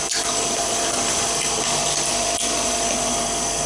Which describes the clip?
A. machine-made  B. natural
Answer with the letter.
B